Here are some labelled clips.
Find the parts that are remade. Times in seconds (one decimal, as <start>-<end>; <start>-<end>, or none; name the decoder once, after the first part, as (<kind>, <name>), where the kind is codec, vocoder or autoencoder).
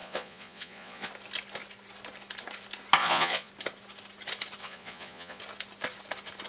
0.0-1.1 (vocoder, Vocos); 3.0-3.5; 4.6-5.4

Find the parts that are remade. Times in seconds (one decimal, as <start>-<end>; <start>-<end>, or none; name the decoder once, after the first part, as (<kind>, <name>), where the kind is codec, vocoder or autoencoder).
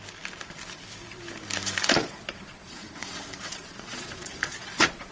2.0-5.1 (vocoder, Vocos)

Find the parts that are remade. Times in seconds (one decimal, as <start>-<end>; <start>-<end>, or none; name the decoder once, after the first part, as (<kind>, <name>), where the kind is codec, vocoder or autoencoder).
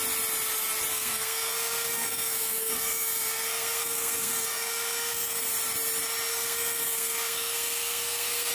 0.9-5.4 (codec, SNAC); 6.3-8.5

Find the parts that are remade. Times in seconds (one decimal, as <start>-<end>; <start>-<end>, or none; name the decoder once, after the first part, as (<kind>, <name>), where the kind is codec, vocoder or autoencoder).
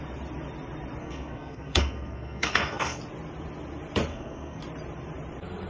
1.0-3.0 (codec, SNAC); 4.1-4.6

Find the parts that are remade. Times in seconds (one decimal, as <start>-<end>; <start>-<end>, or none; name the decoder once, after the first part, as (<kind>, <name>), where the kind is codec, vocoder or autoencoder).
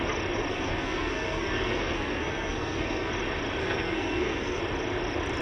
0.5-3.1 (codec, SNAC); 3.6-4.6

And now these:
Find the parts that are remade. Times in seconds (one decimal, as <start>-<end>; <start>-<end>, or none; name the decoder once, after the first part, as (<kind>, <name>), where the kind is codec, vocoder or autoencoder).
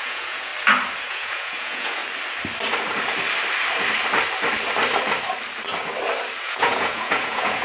0.0-0.5 (vocoder, Vocos); 1.1-2.0; 6.4-7.6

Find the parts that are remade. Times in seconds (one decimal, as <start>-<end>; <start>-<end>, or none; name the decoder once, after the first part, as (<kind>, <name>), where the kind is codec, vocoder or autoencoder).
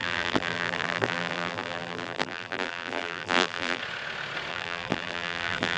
0.0-3.8 (vocoder, BigVGAN v2); 4.5-5.8